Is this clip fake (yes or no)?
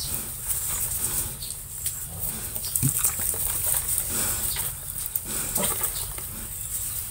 no